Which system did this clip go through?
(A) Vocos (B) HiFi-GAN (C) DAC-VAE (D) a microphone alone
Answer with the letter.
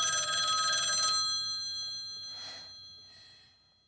D